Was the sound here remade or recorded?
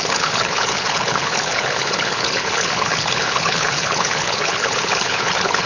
remade